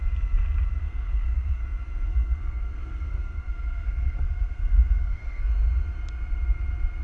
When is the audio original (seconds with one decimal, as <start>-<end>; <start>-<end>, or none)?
0.0-0.8; 1.6-2.1; 5.5-7.0